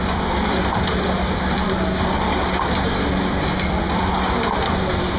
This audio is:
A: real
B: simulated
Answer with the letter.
A